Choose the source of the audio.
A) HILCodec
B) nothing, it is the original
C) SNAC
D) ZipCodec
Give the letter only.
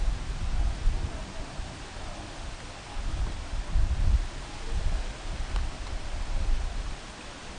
B